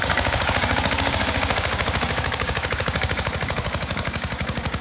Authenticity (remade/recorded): remade